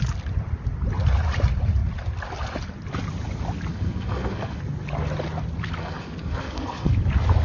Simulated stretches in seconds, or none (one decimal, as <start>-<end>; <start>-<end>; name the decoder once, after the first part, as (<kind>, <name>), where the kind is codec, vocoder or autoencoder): 3.7-4.6 (codec, SNAC); 5.8-6.9